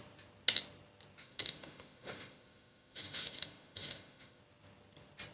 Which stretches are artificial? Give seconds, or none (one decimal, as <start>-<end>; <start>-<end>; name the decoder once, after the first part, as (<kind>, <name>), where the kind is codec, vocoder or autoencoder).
1.2-4.4 (autoencoder, DAC-VAE)